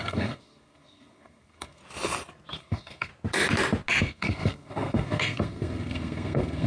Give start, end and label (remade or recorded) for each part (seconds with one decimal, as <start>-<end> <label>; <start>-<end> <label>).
0.0-1.8 remade; 1.8-2.6 recorded; 2.6-3.1 remade; 3.1-4.0 recorded; 4.0-6.7 remade